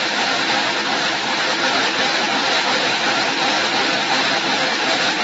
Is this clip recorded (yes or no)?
yes